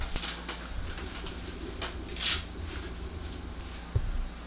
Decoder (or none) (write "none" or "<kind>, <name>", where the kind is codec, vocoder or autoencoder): none